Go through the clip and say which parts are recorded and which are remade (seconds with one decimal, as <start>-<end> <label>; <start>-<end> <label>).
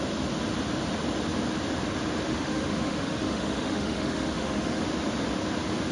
0.0-2.3 recorded; 2.3-4.8 remade; 4.8-5.9 recorded